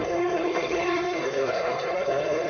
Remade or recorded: remade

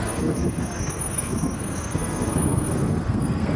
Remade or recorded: remade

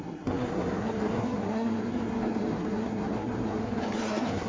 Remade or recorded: remade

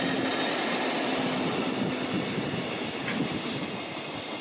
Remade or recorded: recorded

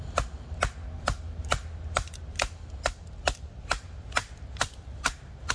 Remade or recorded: recorded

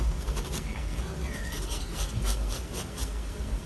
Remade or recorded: remade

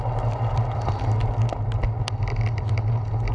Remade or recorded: recorded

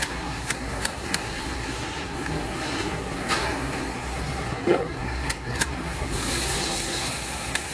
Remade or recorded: remade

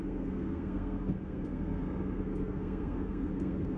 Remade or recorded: remade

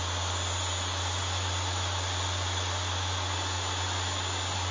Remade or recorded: recorded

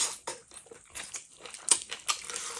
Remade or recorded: recorded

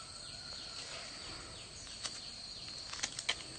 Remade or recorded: recorded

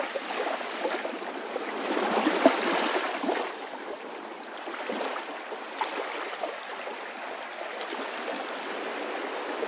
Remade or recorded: recorded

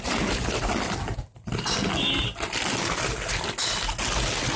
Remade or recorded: recorded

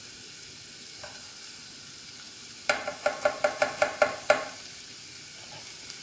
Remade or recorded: recorded